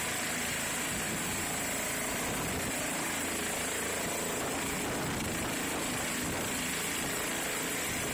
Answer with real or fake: fake